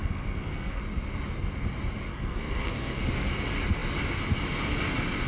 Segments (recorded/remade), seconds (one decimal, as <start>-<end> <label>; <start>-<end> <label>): 0.0-0.8 remade; 0.8-2.1 recorded; 2.1-3.0 remade; 3.0-5.3 recorded